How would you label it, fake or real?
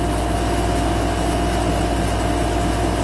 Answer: real